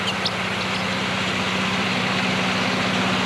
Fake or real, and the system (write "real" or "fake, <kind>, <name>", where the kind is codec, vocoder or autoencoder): real